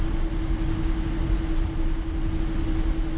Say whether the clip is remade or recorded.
recorded